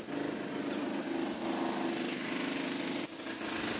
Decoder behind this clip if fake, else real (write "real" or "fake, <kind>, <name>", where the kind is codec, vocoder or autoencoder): real